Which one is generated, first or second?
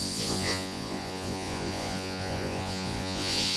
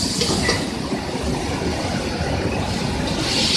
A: first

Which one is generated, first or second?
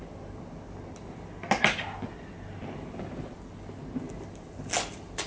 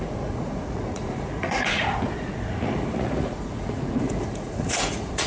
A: second